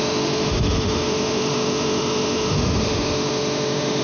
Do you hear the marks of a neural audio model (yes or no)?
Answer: yes